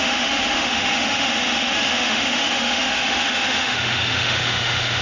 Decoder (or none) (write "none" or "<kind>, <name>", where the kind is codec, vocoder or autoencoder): autoencoder, DAC-VAE